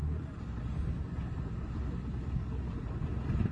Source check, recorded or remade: remade